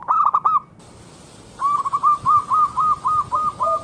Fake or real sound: real